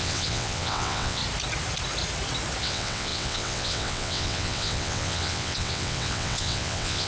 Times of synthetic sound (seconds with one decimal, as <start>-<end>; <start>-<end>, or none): 0.0-1.2; 2.6-7.1